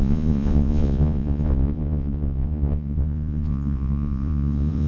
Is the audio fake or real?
fake